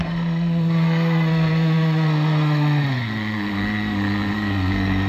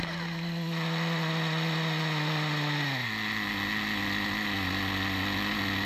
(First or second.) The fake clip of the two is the first